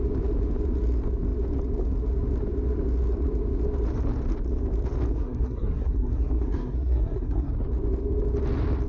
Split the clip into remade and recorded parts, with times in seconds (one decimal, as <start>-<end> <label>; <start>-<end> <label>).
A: 0.0-5.1 recorded; 5.1-7.5 remade; 7.5-8.9 recorded